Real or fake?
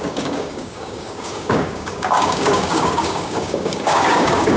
fake